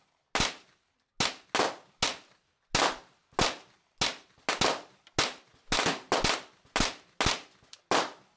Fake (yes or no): no